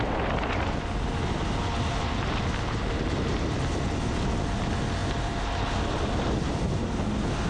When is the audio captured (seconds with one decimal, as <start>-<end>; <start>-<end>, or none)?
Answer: 0.0-7.5